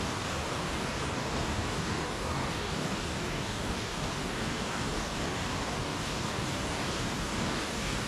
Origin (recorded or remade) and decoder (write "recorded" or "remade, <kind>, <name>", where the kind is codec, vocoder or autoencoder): remade, codec, DAC